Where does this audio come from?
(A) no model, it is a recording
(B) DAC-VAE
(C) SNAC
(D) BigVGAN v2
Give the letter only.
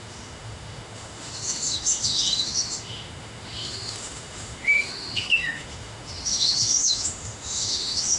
B